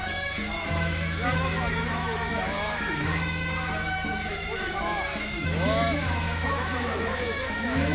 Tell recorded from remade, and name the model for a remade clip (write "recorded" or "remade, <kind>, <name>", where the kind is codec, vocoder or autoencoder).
remade, autoencoder, DAC-VAE